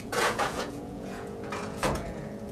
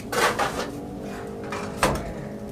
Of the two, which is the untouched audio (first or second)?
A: second